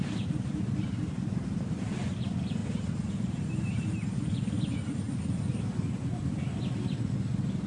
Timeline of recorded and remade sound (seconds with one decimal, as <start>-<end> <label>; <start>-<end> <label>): 0.0-7.7 recorded